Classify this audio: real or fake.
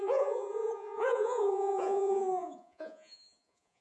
fake